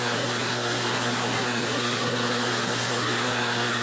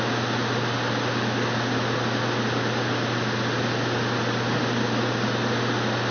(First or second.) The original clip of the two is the second